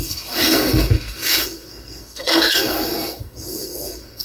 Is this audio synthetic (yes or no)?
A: yes